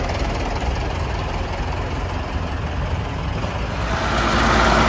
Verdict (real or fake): real